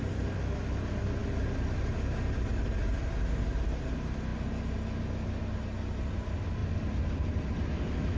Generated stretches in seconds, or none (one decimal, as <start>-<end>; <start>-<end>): 6.6-8.2